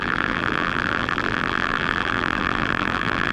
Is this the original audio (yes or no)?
no